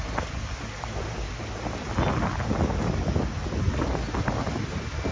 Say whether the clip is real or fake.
real